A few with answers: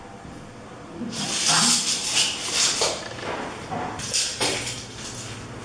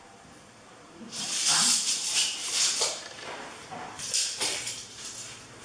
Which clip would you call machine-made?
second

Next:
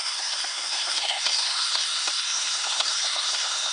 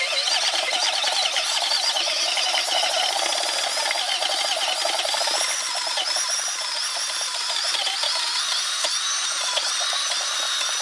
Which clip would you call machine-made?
first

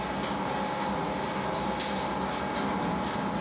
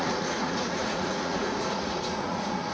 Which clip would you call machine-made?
second